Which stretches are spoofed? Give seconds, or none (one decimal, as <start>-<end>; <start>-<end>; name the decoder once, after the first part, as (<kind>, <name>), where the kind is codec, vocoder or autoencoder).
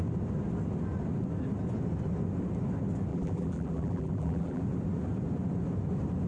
3.1-4.6 (vocoder, BigVGAN v2)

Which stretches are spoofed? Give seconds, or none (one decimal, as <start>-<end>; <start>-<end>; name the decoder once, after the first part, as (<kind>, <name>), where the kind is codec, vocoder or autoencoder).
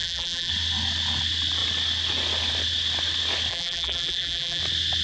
0.0-0.5 (vocoder, BigVGAN v2); 3.5-4.6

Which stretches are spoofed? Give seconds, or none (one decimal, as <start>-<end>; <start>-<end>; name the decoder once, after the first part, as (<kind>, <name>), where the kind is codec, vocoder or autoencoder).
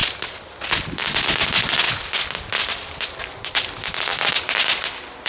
none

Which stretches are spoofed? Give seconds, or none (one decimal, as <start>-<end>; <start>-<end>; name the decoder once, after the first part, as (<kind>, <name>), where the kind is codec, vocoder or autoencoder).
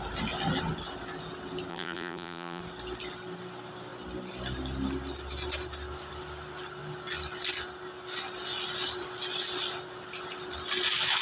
1.7-2.6 (vocoder, BigVGAN v2)